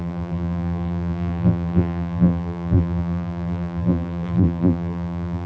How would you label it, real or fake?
fake